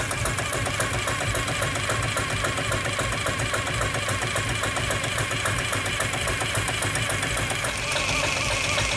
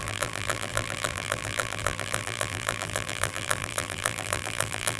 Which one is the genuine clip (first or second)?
first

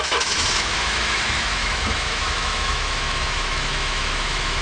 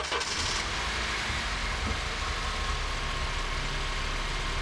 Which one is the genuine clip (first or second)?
second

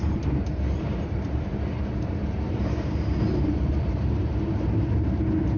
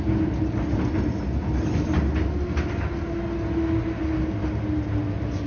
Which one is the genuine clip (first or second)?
second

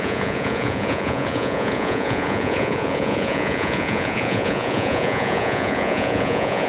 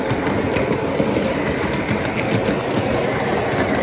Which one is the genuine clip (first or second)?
second